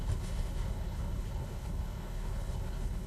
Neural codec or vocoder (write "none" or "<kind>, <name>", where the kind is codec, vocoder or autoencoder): codec, HILCodec